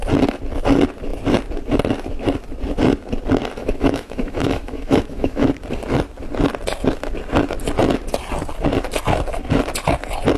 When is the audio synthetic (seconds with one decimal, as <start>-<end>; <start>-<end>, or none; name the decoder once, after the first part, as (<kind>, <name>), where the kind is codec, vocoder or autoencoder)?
3.6-5.5 (autoencoder, DAC-VAE)